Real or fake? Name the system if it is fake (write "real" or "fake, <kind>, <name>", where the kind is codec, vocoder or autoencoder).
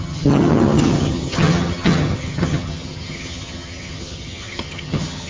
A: fake, vocoder, HiFi-GAN